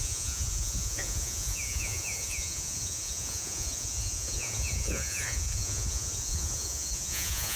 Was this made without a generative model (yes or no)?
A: no